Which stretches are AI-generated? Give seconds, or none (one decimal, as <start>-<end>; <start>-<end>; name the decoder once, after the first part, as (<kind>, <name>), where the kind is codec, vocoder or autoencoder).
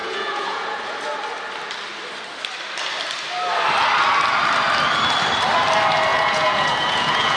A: 0.0-0.8 (vocoder, Vocos); 6.1-7.4